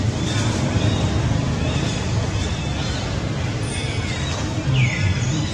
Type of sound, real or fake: fake